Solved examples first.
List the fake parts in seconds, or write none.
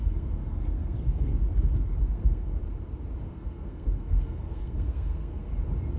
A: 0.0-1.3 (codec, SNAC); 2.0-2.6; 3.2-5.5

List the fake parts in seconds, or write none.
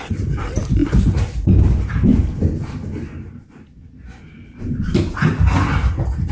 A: 0.0-2.1 (vocoder, BigVGAN v2)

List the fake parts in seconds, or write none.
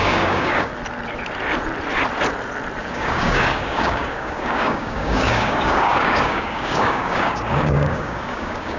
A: 0.0-0.7 (codec, DAC); 2.8-8.8